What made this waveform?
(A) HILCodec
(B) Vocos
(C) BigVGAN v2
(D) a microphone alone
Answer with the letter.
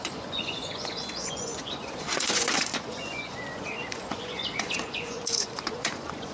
B